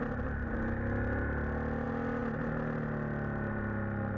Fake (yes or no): no